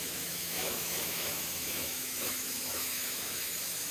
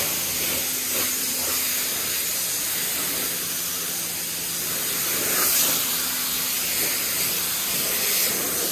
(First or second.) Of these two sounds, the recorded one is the second